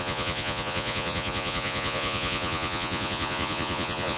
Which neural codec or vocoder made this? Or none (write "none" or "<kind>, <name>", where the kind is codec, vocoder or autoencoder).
vocoder, Vocos